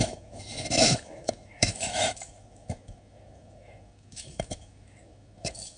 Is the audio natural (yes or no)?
no